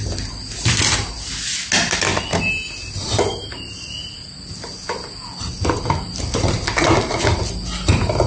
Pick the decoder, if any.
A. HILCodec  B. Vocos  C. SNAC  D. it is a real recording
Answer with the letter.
D